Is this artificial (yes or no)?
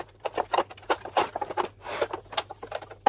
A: no